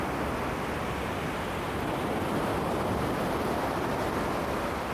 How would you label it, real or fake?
real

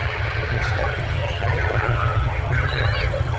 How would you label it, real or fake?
fake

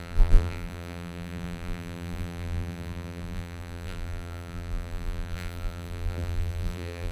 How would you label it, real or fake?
fake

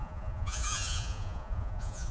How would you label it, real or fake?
fake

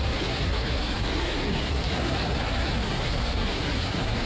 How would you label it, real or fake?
fake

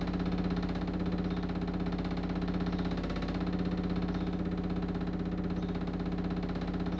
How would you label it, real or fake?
real